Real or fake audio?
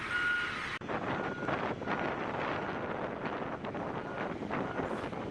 real